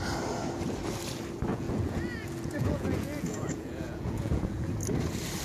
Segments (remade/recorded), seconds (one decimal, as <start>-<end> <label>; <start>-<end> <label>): 0.0-1.5 recorded; 1.5-4.7 remade; 4.7-5.4 recorded

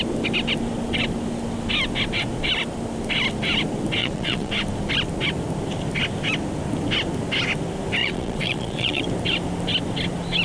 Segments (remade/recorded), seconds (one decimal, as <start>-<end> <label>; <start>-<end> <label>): 0.0-4.0 recorded; 4.0-4.5 remade; 4.5-8.0 recorded; 8.0-9.0 remade; 9.0-10.4 recorded

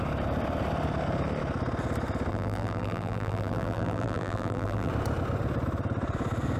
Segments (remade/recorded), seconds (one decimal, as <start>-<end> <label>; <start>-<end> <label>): 0.0-2.3 recorded; 2.3-4.9 remade; 4.9-6.6 recorded

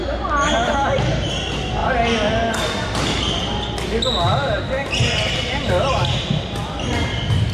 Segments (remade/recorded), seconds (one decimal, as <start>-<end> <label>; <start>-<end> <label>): 0.0-7.5 recorded